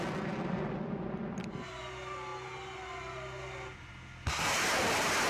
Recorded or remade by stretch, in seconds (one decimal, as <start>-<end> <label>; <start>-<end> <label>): 0.0-5.3 recorded